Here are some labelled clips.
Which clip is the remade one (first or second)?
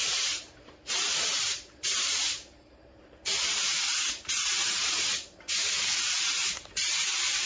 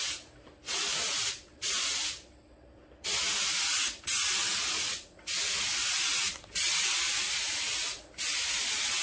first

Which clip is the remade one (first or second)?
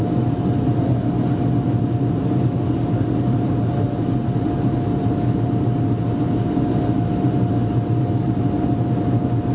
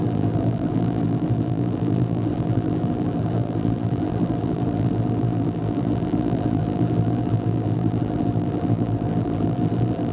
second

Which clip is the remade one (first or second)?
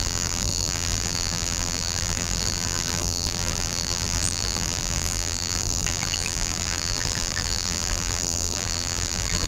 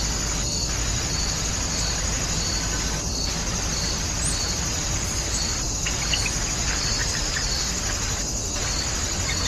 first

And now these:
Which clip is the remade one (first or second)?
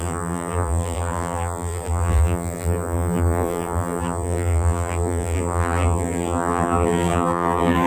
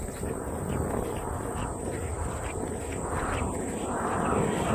first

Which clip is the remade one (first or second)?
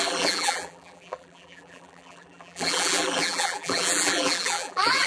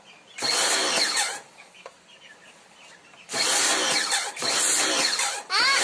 first